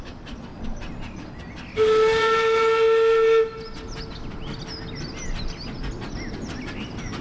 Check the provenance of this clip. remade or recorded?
recorded